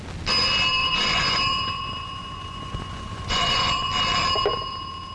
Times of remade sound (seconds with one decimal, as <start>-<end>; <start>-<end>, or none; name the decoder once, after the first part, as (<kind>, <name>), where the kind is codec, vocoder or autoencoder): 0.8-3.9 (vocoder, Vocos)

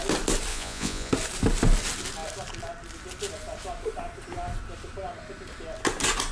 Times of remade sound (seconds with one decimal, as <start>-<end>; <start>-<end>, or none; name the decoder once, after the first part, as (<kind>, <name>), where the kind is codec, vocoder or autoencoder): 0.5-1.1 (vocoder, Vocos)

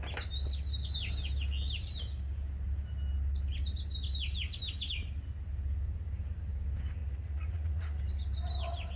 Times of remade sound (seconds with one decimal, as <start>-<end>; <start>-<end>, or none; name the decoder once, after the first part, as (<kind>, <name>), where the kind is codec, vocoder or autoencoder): 7.0-8.0 (vocoder, Vocos)

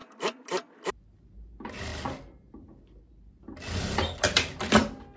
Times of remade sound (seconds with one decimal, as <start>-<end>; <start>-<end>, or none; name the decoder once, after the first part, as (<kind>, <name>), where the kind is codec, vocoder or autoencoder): none